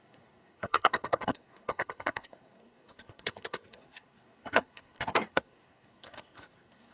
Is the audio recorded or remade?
remade